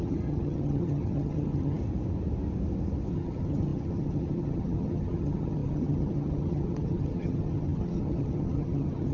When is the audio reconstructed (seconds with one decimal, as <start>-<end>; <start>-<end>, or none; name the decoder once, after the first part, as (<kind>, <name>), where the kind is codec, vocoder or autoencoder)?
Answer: 0.0-1.8 (vocoder, HiFi-GAN); 3.1-9.1